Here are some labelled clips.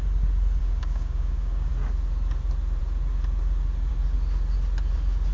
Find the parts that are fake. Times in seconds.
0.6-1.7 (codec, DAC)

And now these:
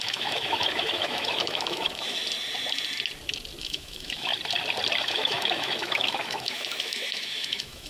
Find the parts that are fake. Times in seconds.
0.0-2.2 (autoencoder, DAC-VAE); 3.6-4.3; 5.0-7.9

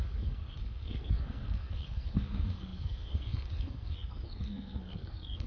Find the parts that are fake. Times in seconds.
0.0-5.5 (codec, SNAC)

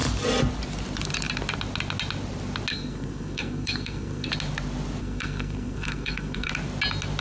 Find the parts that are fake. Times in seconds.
2.7-4.3 (codec, SNAC); 5.0-6.5

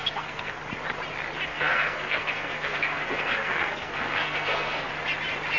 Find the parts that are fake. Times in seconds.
0.0-0.6 (codec, SNAC); 1.5-4.9

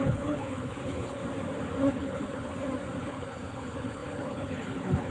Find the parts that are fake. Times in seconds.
0.0-1.2 (codec, HILCodec); 1.9-2.5; 3.0-5.1